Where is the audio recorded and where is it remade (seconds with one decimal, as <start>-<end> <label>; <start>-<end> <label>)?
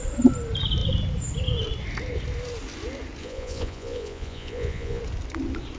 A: 0.0-3.2 recorded; 3.2-5.0 remade; 5.0-5.8 recorded